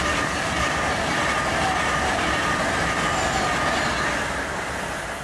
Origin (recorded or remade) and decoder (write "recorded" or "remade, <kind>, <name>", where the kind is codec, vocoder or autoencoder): recorded